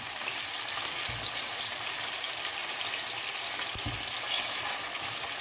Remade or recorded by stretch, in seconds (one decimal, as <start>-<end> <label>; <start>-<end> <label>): 0.0-5.4 recorded